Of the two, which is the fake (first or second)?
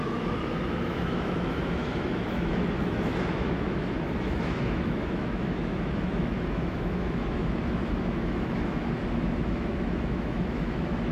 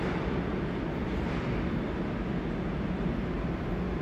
first